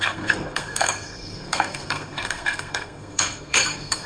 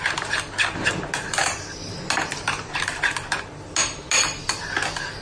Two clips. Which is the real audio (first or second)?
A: second